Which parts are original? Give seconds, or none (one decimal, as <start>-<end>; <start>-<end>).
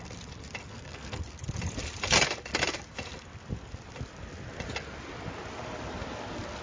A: 0.0-0.7; 1.2-6.6